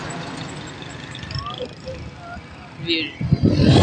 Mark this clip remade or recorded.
recorded